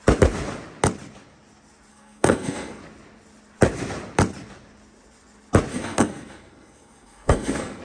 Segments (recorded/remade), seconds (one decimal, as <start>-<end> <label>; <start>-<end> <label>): 0.0-1.9 recorded; 1.9-2.8 remade; 2.8-5.7 recorded; 5.7-7.8 remade